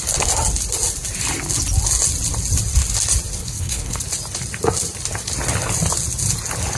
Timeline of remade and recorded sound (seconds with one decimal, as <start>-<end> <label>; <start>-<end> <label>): 0.0-3.4 recorded; 3.4-4.0 remade; 4.0-6.8 recorded